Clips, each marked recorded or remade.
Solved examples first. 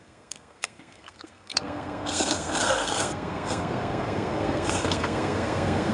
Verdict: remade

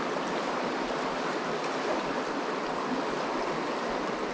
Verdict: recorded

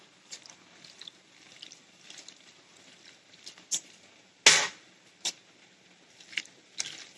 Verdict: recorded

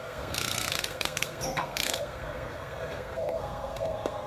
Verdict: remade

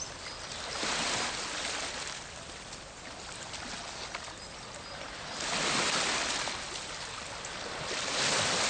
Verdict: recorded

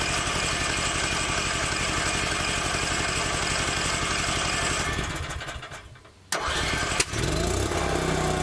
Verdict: recorded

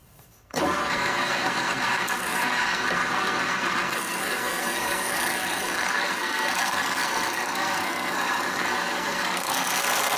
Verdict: remade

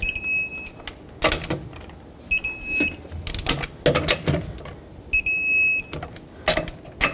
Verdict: recorded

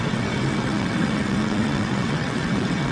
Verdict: remade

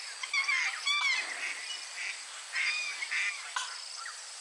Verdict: recorded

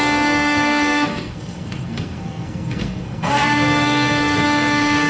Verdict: remade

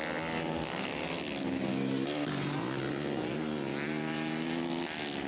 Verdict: recorded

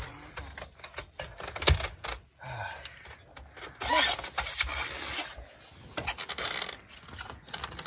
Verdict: recorded